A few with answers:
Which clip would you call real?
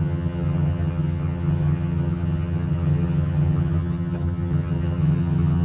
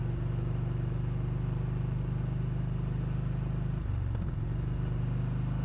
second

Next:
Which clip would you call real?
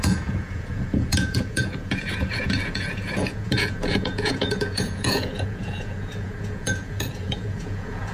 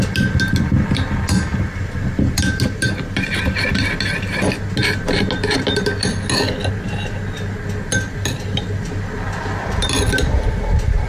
second